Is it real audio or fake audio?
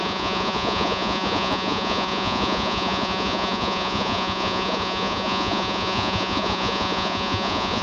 fake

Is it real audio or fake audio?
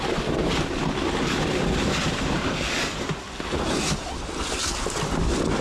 real